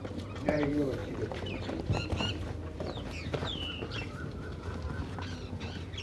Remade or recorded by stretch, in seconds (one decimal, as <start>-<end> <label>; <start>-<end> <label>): 0.0-6.0 recorded